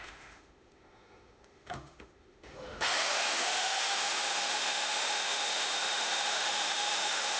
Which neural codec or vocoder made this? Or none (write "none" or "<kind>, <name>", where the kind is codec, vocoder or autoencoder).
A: autoencoder, DAC-VAE